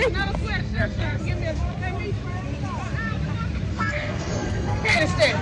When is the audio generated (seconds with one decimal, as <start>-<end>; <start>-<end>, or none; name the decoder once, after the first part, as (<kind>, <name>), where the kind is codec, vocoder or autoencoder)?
0.6-1.2 (codec, SNAC); 3.7-5.0